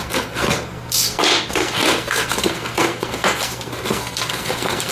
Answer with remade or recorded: remade